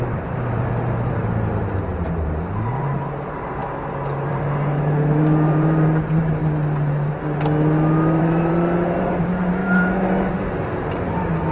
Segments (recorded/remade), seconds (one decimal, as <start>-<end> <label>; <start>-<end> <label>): 0.0-3.6 remade; 3.6-4.3 recorded; 4.3-6.4 remade; 6.4-8.2 recorded; 8.2-11.5 remade